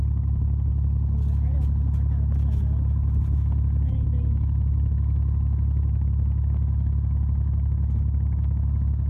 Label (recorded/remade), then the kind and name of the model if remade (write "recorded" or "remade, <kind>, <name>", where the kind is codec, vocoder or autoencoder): recorded